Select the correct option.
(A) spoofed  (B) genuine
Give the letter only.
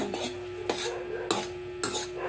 B